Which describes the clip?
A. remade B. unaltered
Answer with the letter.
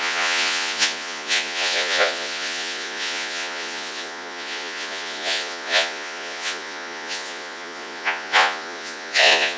A